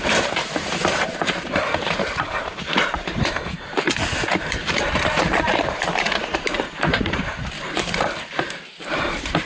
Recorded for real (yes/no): no